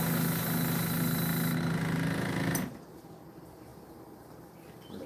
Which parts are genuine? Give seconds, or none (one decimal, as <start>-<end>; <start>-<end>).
0.0-5.1